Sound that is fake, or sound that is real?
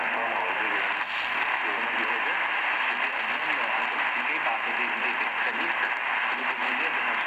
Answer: real